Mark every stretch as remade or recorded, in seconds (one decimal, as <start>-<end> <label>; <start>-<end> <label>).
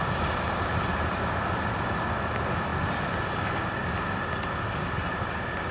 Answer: 0.0-5.7 recorded